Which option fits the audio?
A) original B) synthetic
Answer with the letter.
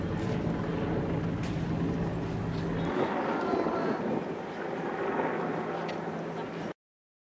A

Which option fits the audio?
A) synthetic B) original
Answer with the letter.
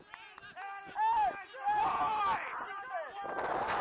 B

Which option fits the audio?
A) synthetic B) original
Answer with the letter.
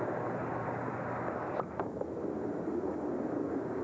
B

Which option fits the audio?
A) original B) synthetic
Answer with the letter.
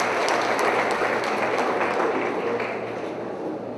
A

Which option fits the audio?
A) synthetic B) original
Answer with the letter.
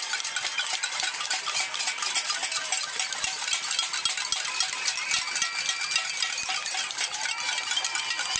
B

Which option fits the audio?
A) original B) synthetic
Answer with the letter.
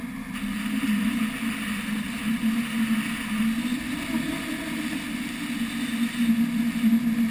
A